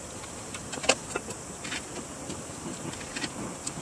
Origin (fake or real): real